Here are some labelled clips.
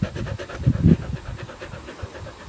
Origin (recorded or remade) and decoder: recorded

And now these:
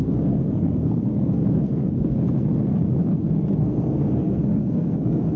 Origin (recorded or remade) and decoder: remade, codec, SNAC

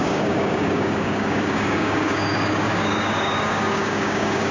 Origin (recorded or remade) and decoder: remade, codec, DAC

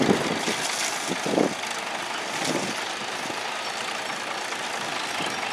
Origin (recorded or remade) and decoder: recorded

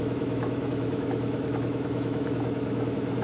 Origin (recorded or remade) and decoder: remade, autoencoder, DAC-VAE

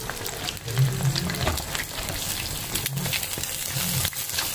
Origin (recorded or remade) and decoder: recorded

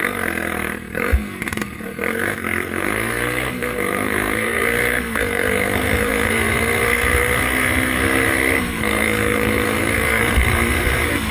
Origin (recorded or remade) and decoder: remade, codec, SNAC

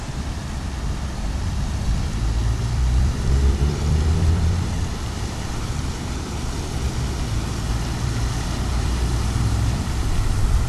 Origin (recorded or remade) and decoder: remade, vocoder, BigVGAN v2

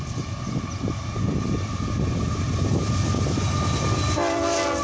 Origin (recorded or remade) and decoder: remade, vocoder, BigVGAN v2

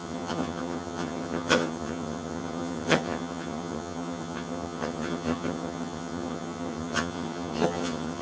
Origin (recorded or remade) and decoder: remade, vocoder, HiFi-GAN